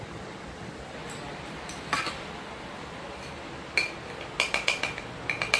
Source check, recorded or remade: recorded